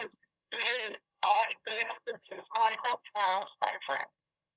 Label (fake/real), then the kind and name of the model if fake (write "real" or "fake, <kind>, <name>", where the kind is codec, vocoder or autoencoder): fake, codec, SNAC